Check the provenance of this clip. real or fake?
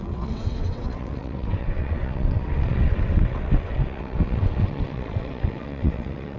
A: fake